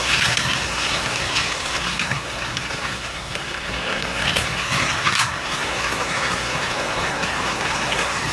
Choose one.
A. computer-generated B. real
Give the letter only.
A